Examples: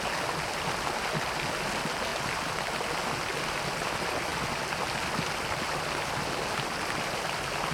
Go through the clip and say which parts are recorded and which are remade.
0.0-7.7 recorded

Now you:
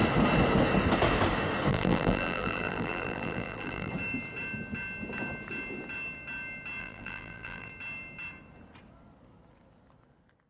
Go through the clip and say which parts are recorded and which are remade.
0.0-1.7 recorded; 1.7-3.9 remade; 3.9-6.8 recorded; 6.8-7.7 remade; 7.7-10.5 recorded